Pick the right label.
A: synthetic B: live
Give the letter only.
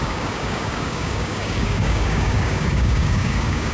A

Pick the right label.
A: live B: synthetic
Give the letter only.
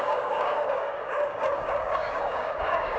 B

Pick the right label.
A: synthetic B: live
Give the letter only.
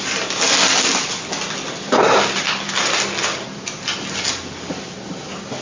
B